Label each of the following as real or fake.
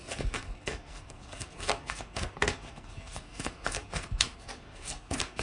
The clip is fake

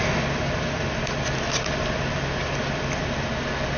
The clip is real